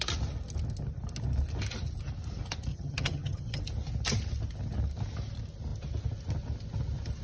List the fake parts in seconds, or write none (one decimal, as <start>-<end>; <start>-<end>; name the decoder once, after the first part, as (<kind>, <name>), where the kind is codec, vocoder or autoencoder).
2.7-3.6 (vocoder, HiFi-GAN)